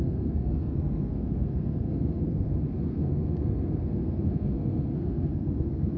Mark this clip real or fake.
fake